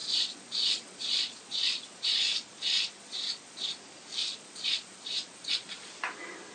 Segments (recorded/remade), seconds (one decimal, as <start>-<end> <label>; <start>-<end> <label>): 0.0-3.7 remade; 3.7-4.2 recorded; 4.2-5.9 remade; 5.9-6.5 recorded